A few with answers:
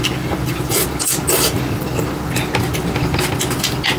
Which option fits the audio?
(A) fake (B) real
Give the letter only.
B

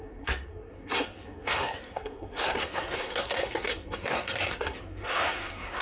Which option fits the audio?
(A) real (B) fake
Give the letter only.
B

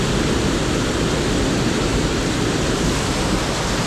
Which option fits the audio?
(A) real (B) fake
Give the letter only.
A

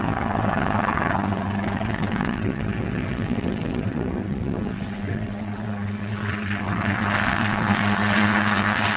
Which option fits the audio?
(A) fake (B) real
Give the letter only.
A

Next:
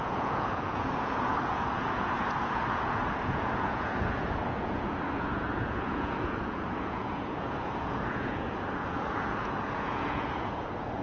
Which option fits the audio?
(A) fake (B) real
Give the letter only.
A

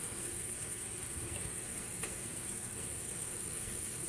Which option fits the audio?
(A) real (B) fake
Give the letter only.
B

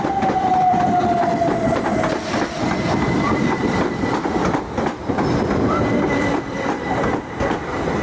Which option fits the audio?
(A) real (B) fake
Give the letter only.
B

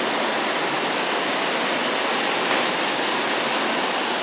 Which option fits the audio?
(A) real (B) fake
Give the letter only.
A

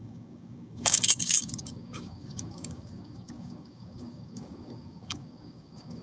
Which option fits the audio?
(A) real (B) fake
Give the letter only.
B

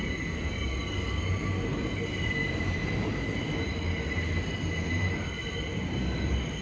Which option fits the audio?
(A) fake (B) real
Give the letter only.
B